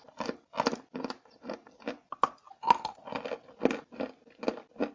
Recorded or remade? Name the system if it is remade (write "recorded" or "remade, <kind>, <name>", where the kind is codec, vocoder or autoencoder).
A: recorded